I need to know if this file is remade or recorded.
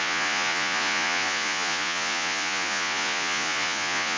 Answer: remade